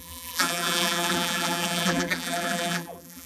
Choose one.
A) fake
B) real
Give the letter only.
A